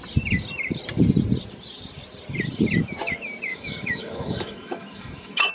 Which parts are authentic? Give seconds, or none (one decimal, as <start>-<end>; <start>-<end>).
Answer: 0.0-3.5